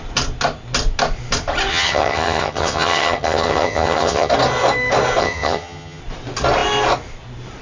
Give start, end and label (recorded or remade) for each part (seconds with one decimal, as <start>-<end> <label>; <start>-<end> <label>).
0.0-1.7 recorded; 1.7-4.3 remade; 4.3-5.2 recorded; 5.2-6.0 remade; 6.0-7.6 recorded